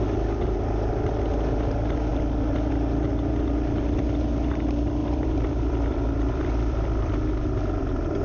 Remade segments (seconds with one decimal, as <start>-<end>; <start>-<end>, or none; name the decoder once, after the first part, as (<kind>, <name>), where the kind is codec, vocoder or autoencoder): 5.0-7.1 (vocoder, BigVGAN v2)